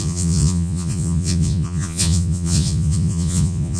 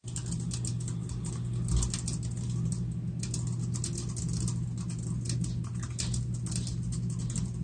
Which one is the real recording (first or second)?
second